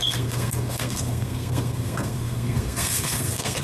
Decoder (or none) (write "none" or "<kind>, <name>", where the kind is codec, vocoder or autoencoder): codec, SNAC